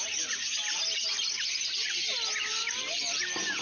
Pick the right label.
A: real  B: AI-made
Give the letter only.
A